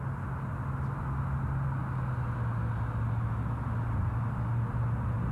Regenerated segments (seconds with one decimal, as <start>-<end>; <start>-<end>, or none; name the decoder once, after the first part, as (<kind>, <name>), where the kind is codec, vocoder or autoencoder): none